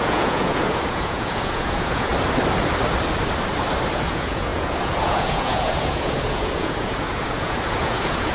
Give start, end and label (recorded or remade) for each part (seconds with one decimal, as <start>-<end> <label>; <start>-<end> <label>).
0.0-2.1 remade; 2.1-3.9 recorded; 3.9-8.3 remade